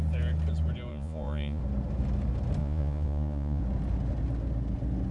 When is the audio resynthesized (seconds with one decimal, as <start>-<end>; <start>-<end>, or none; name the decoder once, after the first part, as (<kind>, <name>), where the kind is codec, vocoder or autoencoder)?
0.9-1.6 (vocoder, Vocos); 2.6-3.6